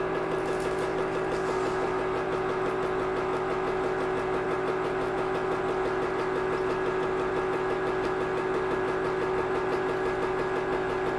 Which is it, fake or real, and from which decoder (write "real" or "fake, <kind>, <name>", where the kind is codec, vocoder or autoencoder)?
real